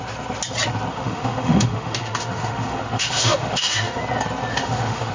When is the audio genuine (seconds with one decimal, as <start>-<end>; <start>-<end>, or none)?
0.0-0.9; 4.0-4.5